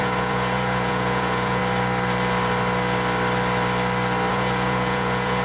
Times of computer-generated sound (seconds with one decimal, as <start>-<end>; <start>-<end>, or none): 0.0-1.6; 4.3-5.4